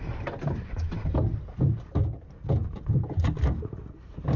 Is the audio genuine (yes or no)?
yes